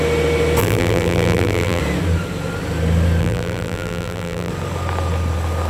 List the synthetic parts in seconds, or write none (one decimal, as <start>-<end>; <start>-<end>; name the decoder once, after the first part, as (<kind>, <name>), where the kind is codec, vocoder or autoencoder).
0.6-1.8 (vocoder, BigVGAN v2); 3.2-4.5